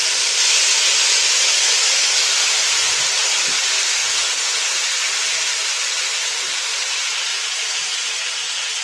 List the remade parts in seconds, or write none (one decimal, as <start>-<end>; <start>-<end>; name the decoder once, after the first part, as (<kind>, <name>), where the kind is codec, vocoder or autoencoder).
4.0-4.6 (vocoder, Vocos); 7.3-8.1